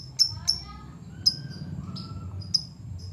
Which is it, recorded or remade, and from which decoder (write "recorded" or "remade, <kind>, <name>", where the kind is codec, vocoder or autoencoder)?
recorded